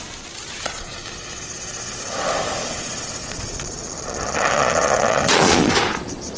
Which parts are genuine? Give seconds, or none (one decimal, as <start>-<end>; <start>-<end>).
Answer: 0.0-3.2; 5.7-6.4